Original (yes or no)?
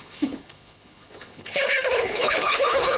no